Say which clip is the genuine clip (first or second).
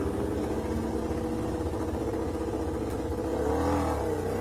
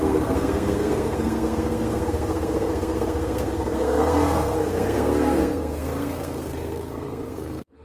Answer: first